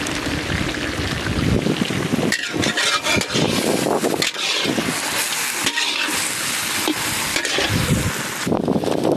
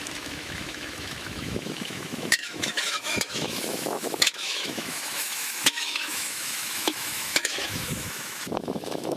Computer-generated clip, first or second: second